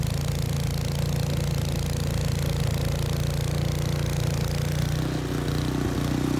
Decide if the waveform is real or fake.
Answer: real